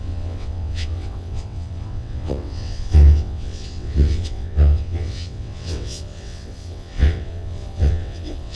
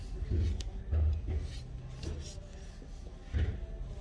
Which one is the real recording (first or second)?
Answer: second